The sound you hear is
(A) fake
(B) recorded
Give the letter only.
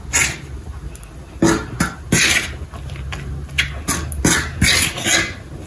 B